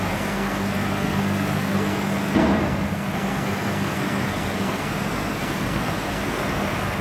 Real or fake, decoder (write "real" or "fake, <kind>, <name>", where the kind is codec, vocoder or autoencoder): fake, codec, SNAC